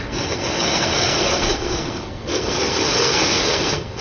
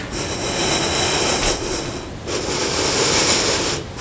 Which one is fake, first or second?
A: first